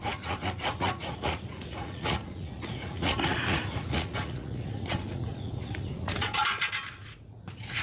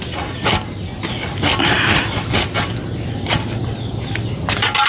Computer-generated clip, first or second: first